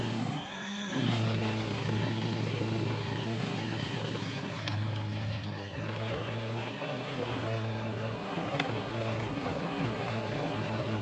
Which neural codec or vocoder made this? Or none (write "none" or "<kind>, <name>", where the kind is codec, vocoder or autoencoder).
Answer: codec, SNAC